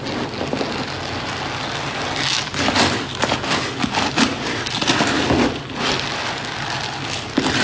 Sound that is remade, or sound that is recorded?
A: recorded